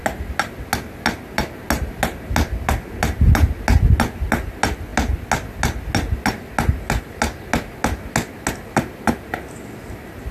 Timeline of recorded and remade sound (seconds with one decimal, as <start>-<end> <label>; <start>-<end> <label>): 0.0-10.3 recorded